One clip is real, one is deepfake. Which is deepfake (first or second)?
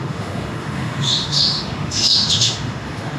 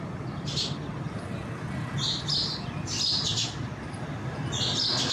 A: first